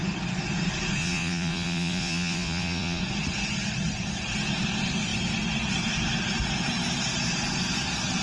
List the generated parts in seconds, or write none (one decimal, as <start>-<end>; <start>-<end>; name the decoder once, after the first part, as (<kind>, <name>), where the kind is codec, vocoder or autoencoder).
1.0-3.0 (vocoder, Vocos)